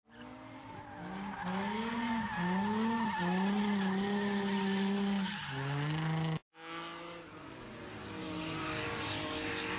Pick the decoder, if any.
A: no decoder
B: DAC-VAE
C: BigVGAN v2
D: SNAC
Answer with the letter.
A